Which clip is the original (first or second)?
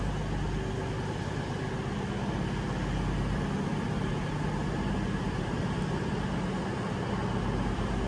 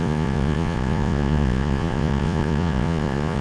first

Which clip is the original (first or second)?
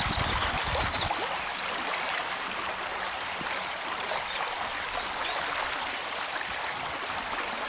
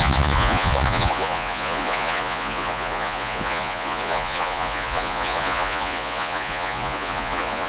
first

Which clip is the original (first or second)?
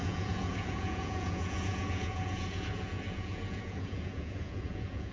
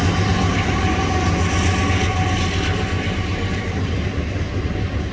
second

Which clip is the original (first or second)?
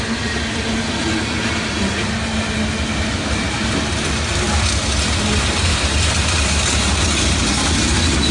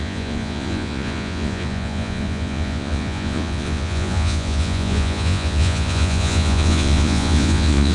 first